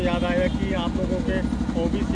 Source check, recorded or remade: recorded